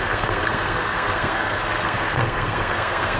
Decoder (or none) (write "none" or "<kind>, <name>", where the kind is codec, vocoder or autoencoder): codec, SNAC